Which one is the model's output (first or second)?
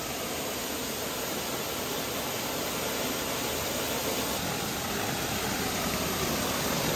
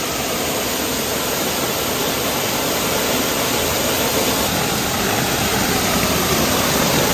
second